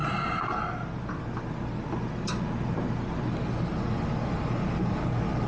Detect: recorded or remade recorded